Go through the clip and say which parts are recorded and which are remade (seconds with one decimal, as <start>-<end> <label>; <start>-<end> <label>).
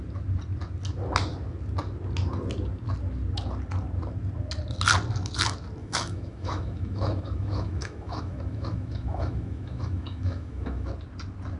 0.0-5.8 recorded; 5.8-10.9 remade; 10.9-11.6 recorded